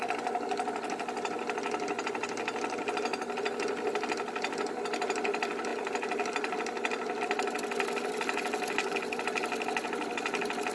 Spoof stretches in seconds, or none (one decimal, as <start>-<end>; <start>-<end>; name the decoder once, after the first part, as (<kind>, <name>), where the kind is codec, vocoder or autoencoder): none